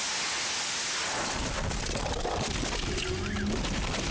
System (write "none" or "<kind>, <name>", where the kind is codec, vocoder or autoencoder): none